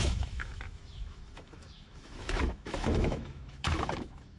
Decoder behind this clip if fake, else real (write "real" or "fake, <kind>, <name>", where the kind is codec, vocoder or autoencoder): fake, autoencoder, DAC-VAE